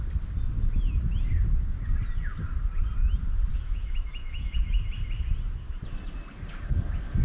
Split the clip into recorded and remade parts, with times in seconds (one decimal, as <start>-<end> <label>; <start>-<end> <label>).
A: 0.0-3.5 recorded; 3.5-5.1 remade; 5.1-7.2 recorded